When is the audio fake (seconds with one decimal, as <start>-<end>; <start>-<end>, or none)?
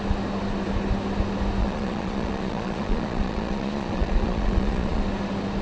1.6-5.0